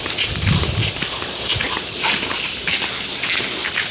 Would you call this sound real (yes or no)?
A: yes